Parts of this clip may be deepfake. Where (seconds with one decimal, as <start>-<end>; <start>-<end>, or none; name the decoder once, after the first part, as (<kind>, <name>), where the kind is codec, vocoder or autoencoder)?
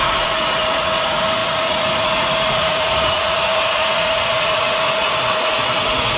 0.0-6.2 (vocoder, Vocos)